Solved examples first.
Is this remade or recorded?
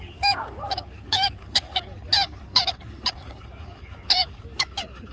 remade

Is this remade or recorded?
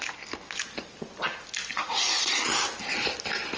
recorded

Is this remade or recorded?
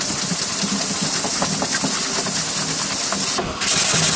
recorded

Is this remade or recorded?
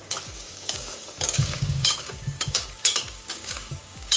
remade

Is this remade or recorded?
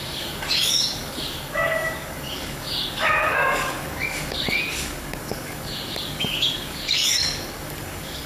remade